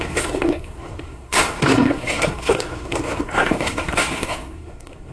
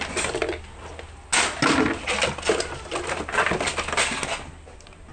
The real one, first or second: second